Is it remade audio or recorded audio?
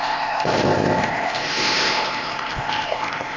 remade